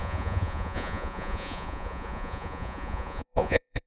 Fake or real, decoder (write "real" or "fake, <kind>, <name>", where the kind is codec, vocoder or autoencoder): fake, vocoder, Vocos